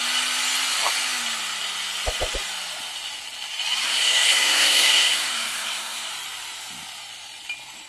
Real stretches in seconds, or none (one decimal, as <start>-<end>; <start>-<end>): 0.0-3.8; 6.1-7.9